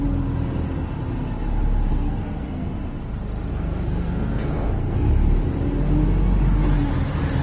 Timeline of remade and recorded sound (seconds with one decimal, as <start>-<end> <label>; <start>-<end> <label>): 0.0-1.9 recorded; 1.9-2.7 remade; 2.7-3.5 recorded; 3.5-5.1 remade; 5.1-7.4 recorded